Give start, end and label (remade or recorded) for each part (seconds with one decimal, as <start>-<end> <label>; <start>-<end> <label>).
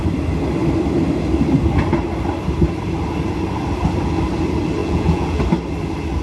0.0-4.8 recorded; 4.8-5.4 remade; 5.4-6.2 recorded